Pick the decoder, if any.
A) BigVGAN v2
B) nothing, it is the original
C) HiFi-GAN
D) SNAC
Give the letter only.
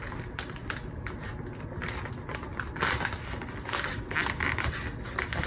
B